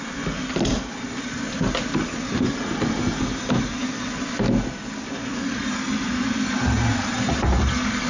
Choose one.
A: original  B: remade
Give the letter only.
A